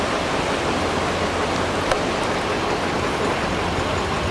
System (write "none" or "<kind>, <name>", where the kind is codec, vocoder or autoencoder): none